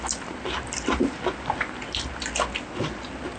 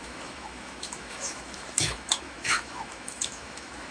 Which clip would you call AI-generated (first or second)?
second